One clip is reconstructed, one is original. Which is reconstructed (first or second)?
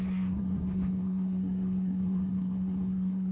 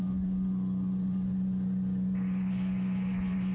first